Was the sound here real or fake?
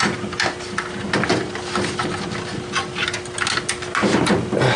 real